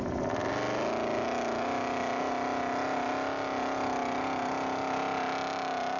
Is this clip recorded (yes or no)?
yes